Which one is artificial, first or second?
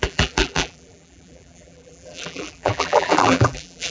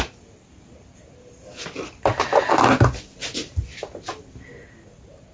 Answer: first